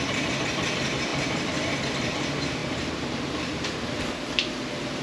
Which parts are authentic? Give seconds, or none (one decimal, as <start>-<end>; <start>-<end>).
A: none